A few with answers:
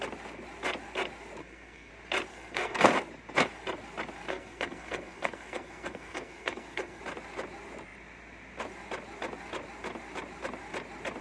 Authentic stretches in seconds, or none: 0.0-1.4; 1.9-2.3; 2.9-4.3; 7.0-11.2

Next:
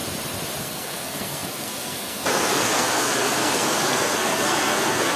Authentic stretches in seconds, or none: 0.0-0.6

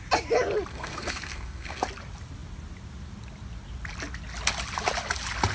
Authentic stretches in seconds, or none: 0.0-0.7; 1.8-5.5

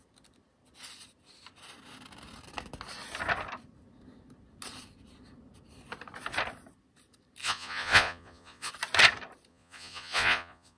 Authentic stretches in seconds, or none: 0.0-7.4; 8.7-9.5

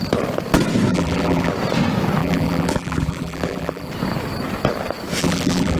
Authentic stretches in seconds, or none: 0.0-0.9; 1.5-2.2; 3.9-5.2

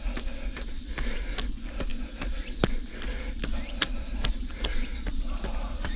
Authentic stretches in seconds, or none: 0.0-6.0

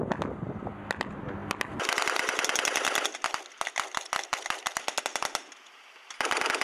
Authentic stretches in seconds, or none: 0.0-6.6

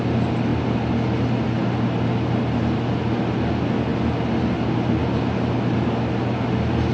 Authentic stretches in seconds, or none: 0.0-0.5; 2.9-6.9